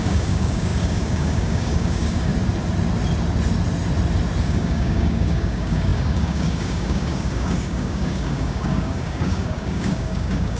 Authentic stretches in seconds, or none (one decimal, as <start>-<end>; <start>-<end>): 2.3-4.4